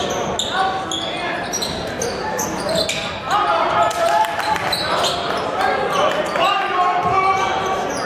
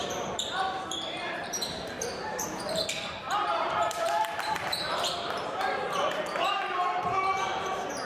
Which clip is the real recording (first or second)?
first